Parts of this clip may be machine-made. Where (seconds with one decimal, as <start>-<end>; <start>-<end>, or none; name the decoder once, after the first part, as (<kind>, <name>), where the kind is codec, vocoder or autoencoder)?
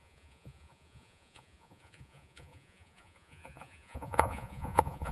0.0-5.1 (vocoder, Vocos)